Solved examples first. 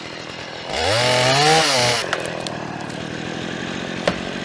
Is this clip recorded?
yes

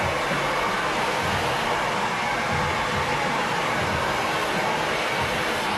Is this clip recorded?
yes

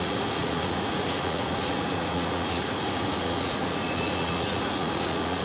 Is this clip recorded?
no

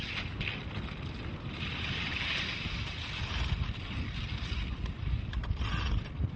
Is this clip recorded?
yes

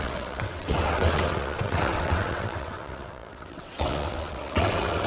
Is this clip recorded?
no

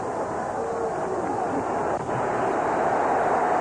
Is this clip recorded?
yes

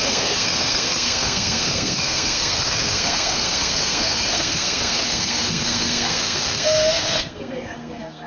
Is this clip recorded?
no